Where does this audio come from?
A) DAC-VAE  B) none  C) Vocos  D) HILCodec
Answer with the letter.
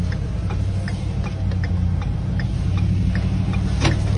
B